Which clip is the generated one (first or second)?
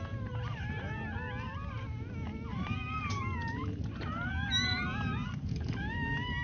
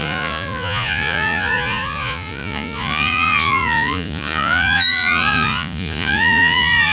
second